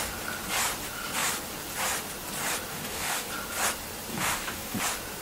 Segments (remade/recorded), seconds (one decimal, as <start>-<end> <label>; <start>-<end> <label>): 0.0-2.7 recorded; 2.7-3.3 remade; 3.3-4.1 recorded; 4.1-4.8 remade; 4.8-5.2 recorded